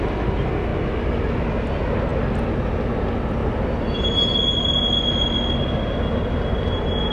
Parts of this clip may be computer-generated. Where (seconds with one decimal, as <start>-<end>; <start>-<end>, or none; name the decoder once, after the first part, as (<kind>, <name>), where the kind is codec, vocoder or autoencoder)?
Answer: 3.4-4.1 (vocoder, BigVGAN v2)

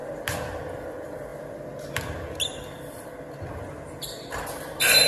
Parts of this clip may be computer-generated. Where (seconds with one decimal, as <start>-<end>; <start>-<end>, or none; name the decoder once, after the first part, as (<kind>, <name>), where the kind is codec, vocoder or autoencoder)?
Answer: 0.6-1.3 (vocoder, BigVGAN v2); 4.4-5.1

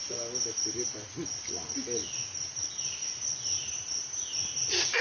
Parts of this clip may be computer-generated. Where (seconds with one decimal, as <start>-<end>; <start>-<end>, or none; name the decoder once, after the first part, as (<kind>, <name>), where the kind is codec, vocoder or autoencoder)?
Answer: none

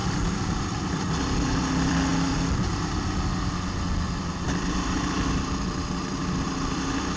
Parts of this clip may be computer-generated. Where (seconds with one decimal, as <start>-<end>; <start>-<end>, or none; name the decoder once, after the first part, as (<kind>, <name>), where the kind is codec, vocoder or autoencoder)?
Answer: 0.6-2.1 (vocoder, BigVGAN v2); 6.4-7.2